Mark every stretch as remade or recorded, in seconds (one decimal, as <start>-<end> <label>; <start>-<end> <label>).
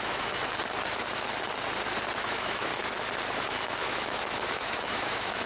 0.0-0.4 remade; 0.4-2.2 recorded; 2.2-2.7 remade; 2.7-3.8 recorded; 3.8-5.5 remade